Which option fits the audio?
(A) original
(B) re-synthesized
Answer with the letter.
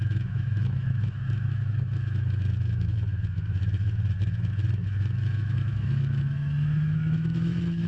B